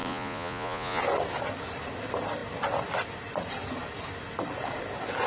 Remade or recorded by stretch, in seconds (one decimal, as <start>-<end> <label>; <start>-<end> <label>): 0.0-1.0 remade; 1.0-5.3 recorded

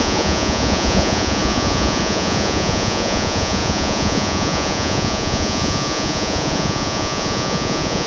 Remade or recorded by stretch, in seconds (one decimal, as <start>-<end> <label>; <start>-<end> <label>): 0.0-8.1 remade

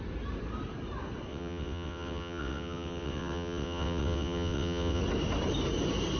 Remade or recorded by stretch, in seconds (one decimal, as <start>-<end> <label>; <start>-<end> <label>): 0.0-1.3 recorded; 1.3-5.0 remade; 5.0-6.2 recorded

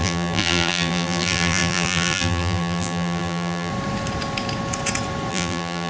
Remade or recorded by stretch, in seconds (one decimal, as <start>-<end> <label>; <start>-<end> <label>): 0.0-3.7 remade; 3.7-5.3 recorded; 5.3-5.9 remade